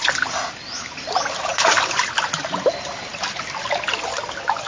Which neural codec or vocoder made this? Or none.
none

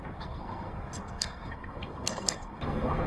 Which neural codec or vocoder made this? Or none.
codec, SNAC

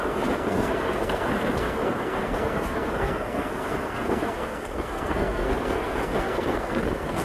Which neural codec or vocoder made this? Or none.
codec, SNAC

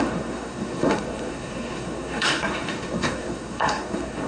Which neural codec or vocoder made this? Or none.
codec, SNAC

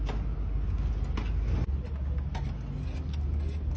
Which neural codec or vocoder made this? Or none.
none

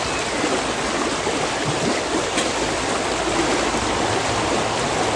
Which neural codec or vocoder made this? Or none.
none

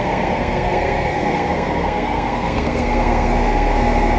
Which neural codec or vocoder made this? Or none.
codec, SNAC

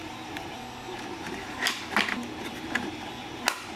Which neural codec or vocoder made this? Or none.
none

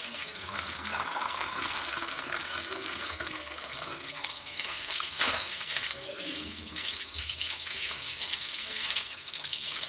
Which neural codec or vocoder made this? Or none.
codec, SNAC